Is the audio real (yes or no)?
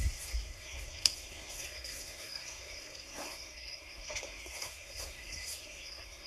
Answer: no